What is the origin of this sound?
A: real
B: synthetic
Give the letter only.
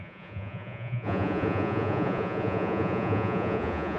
B